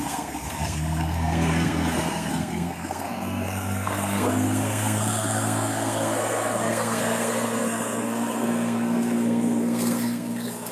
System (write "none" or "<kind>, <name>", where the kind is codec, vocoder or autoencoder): codec, SNAC